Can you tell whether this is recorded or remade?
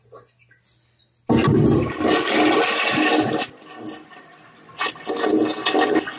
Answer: recorded